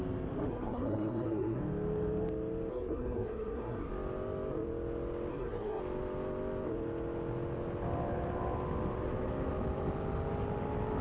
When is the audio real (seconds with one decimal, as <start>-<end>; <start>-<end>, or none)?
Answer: 0.0-0.5; 1.6-2.7; 3.9-5.3; 5.8-11.0